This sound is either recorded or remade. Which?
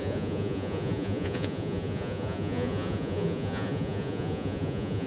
remade